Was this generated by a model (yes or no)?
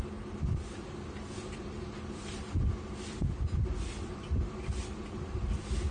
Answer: no